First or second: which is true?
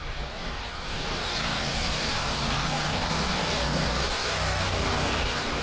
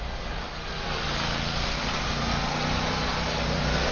second